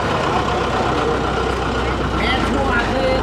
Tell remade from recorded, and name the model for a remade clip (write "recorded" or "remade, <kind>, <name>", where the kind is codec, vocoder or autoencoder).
recorded